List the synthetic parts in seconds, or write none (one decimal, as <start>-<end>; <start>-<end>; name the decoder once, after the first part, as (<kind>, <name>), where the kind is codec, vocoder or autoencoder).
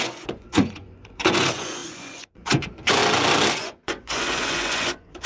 0.0-3.0 (vocoder, Vocos); 3.5-5.3